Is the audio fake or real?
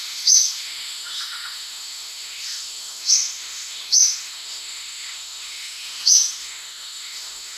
fake